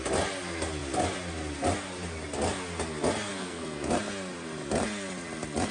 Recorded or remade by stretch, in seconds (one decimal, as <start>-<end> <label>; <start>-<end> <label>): 0.0-3.3 recorded; 3.3-3.9 remade; 3.9-5.7 recorded